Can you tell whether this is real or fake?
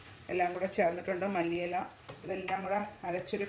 fake